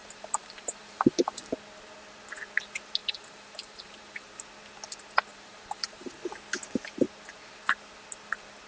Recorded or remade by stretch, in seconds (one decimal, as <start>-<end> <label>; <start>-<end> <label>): 0.0-1.5 remade; 1.5-3.0 recorded; 3.0-4.3 remade; 4.3-5.3 recorded; 5.3-6.1 remade; 6.1-8.7 recorded